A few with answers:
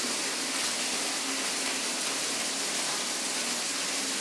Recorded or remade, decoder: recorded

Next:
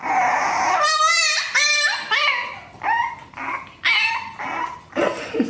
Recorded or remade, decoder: recorded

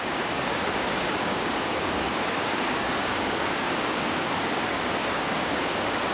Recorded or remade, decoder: remade, codec, DAC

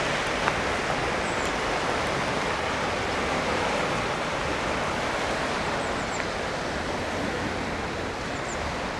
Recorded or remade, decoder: recorded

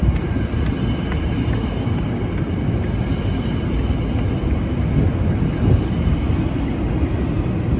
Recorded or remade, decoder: recorded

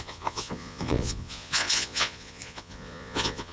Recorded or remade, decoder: remade, vocoder, Vocos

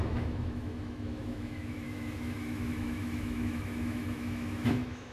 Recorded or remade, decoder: remade, autoencoder, DAC-VAE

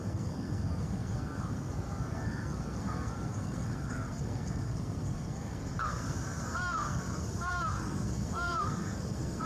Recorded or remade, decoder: remade, codec, SNAC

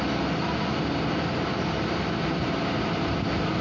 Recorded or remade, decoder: recorded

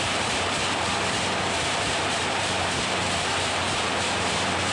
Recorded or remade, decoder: remade, vocoder, BigVGAN v2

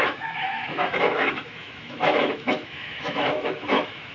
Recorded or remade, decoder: remade, autoencoder, DAC-VAE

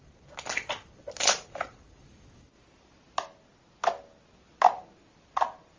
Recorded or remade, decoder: recorded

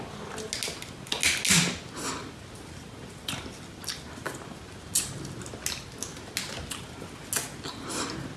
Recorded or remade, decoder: recorded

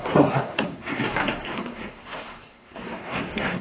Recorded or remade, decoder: remade, codec, SNAC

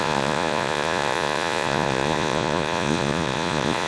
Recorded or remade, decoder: remade, vocoder, Vocos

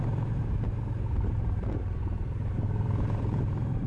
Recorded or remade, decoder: remade, vocoder, BigVGAN v2